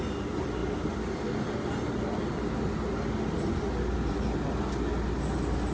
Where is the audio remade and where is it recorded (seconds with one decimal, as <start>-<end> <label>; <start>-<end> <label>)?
0.0-5.7 recorded